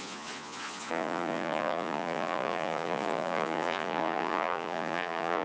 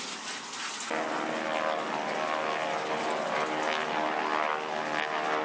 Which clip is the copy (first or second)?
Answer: first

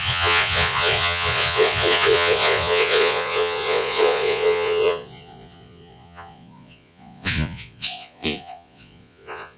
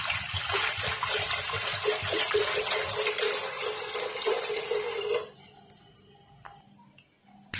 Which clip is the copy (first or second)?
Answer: first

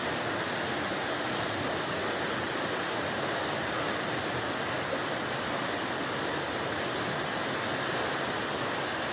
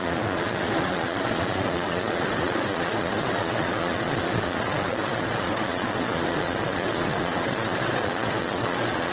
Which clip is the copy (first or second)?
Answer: second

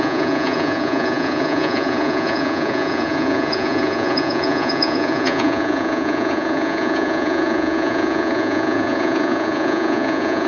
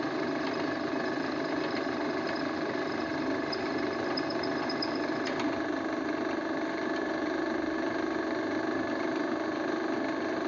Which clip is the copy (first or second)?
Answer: first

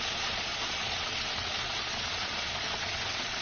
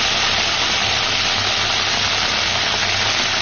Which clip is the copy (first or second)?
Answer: first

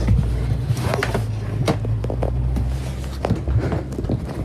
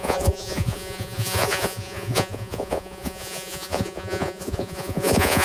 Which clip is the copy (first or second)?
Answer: second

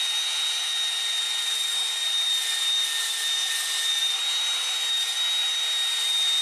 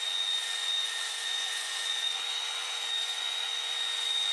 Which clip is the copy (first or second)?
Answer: second